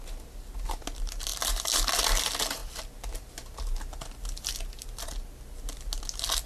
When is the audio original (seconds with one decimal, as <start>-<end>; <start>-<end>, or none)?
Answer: 0.0-6.5